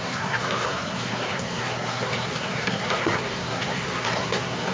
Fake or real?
fake